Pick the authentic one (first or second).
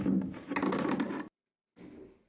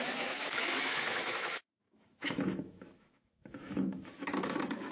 first